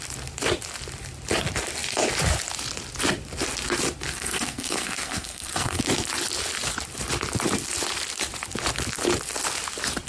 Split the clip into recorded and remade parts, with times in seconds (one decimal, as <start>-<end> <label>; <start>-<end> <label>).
0.0-4.1 recorded; 4.1-5.8 remade; 5.8-10.1 recorded